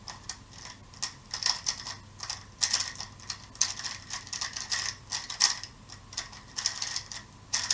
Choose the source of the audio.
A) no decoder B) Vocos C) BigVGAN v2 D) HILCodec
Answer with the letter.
A